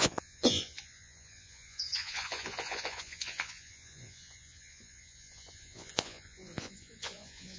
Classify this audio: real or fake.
fake